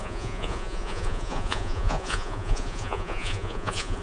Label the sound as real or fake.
fake